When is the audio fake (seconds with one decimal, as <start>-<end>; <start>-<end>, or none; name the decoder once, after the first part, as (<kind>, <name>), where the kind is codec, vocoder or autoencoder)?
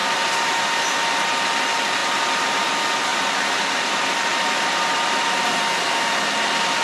0.0-0.6 (vocoder, BigVGAN v2); 2.0-2.7; 3.1-5.6